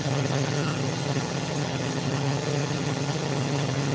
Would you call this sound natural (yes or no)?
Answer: no